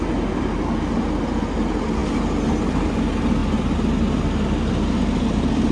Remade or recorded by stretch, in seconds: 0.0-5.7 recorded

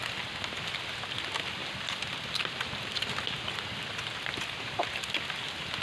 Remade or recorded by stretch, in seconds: 0.0-5.8 recorded